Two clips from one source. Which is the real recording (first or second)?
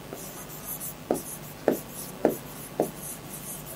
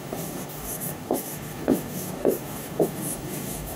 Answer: first